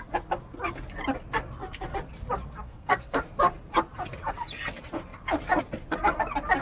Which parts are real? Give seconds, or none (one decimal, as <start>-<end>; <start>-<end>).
0.0-2.5; 3.2-6.6